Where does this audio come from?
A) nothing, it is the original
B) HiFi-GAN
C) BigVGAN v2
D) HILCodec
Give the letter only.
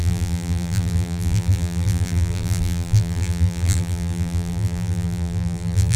C